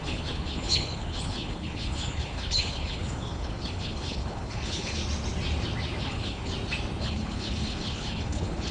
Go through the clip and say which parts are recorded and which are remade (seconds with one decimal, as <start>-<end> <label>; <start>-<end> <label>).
0.0-5.0 remade; 5.0-6.0 recorded; 6.0-6.5 remade; 6.5-7.0 recorded; 7.0-8.7 remade